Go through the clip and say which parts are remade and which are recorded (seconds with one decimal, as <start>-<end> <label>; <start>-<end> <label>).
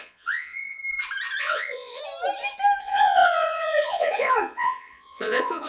0.0-0.8 remade; 0.8-1.4 recorded; 1.4-2.0 remade; 2.0-2.8 recorded; 2.8-5.7 remade